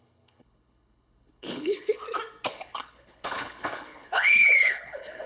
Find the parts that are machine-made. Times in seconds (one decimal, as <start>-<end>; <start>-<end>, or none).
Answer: 0.0-2.0; 2.5-5.3

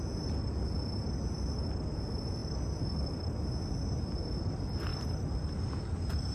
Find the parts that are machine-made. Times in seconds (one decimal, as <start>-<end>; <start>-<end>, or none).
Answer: 2.4-3.4; 4.9-5.6